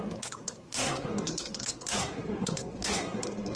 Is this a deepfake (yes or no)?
yes